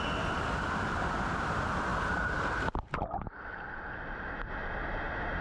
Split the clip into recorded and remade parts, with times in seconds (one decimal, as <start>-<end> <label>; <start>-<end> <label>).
0.0-5.4 recorded